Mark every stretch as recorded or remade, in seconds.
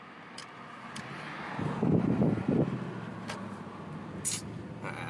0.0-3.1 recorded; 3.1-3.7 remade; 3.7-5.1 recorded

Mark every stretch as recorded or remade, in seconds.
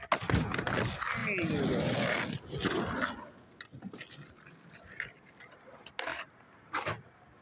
0.0-6.1 recorded; 6.1-7.4 remade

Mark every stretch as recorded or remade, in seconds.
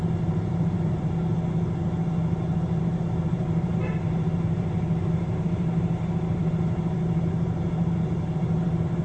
0.0-1.3 remade; 1.3-2.8 recorded; 2.8-9.0 remade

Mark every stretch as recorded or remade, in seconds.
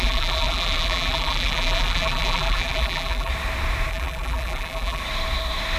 0.0-3.3 remade; 3.3-3.9 recorded; 3.9-5.0 remade; 5.0-5.8 recorded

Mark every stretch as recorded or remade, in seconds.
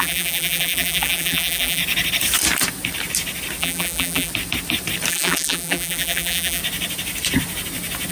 0.0-1.8 remade; 1.8-3.6 recorded; 3.6-4.3 remade; 4.3-5.1 recorded; 5.1-6.6 remade; 6.6-8.1 recorded